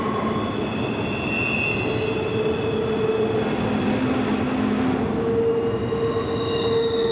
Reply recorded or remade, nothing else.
recorded